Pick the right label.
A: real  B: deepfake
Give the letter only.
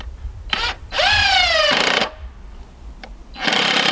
A